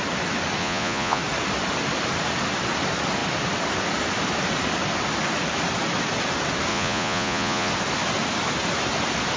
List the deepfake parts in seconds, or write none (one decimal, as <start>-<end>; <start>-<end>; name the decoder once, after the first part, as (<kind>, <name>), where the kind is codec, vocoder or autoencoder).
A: 0.6-1.2 (vocoder, Vocos); 6.7-7.7